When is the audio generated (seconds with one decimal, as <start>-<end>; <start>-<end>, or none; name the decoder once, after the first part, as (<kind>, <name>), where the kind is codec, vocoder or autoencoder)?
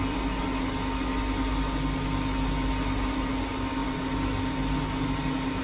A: none